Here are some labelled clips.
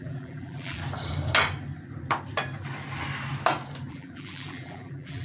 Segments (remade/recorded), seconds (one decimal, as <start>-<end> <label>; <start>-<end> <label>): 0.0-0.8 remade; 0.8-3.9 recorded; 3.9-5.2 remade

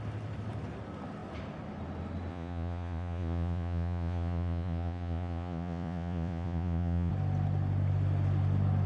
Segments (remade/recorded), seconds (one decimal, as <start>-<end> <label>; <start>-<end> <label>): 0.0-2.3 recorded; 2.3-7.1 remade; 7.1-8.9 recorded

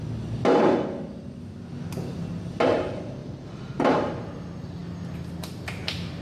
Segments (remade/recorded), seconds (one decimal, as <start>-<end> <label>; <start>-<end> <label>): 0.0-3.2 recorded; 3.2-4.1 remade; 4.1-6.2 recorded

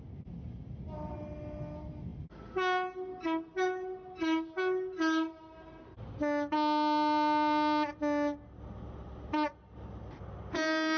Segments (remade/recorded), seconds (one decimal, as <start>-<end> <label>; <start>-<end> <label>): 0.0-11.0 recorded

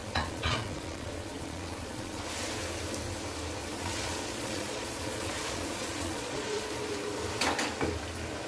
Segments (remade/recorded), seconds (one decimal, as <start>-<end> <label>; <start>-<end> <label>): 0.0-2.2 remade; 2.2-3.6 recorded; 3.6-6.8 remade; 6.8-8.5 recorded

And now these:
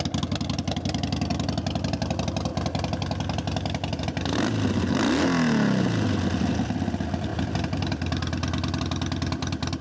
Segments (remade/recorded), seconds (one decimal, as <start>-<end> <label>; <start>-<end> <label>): 0.0-9.8 recorded

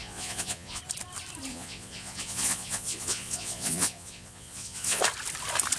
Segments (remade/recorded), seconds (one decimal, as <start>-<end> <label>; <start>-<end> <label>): 0.0-0.8 remade; 0.8-1.5 recorded; 1.5-5.0 remade; 5.0-5.8 recorded